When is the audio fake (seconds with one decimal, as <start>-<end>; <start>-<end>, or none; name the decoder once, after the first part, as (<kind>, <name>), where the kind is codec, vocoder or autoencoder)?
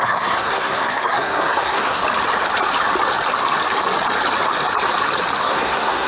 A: 0.0-2.0 (codec, SNAC); 5.4-6.1